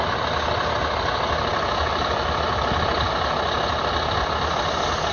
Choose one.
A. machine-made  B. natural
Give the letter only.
B